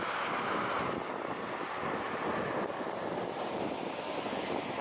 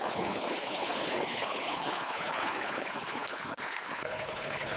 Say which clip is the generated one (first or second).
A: second